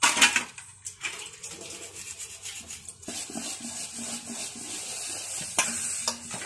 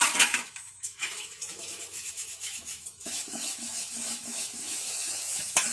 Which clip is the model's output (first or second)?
second